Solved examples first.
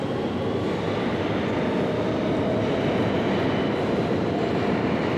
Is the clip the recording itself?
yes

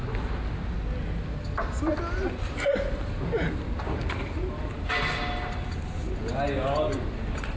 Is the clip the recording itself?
yes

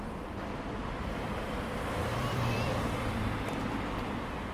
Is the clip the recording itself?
no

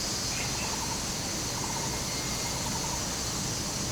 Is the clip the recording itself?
yes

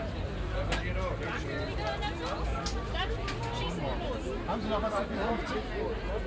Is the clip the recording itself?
yes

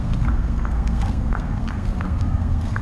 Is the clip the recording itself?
no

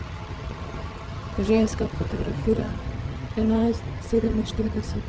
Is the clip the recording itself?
no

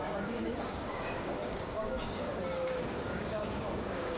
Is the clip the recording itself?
no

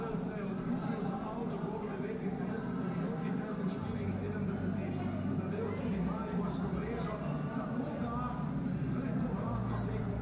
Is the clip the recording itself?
yes